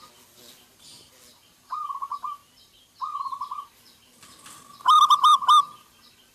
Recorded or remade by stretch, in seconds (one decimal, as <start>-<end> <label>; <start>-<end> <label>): 0.0-2.4 recorded; 2.4-6.3 remade